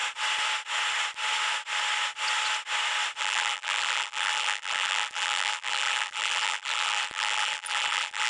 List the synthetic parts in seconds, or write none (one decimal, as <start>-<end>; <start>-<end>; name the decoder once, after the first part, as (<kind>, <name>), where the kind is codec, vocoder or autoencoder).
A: 3.2-8.3 (vocoder, BigVGAN v2)